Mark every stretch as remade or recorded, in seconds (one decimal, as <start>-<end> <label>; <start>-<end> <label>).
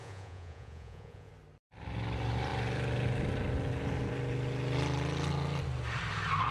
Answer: 0.0-1.3 remade; 1.3-6.5 recorded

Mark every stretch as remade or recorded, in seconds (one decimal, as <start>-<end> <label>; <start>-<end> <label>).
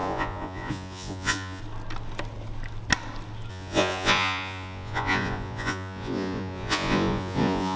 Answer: 0.0-1.6 remade; 1.6-3.5 recorded; 3.5-7.8 remade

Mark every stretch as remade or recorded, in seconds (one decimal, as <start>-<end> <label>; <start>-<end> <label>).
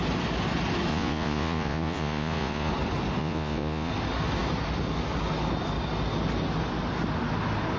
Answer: 0.0-0.9 recorded; 0.9-2.7 remade; 2.7-3.2 recorded; 3.2-3.9 remade; 3.9-7.8 recorded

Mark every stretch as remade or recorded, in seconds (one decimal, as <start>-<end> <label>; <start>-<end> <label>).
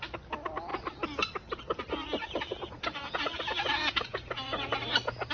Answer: 0.0-2.2 recorded; 2.2-4.7 remade; 4.7-5.3 recorded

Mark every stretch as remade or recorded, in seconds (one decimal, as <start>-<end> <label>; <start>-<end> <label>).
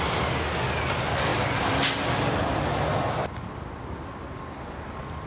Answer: 0.0-5.3 recorded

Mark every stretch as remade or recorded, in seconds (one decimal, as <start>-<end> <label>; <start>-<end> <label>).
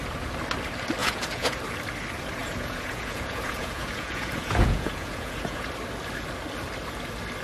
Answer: 0.0-1.0 recorded; 1.0-1.6 remade; 1.6-2.4 recorded; 2.4-5.7 remade; 5.7-7.4 recorded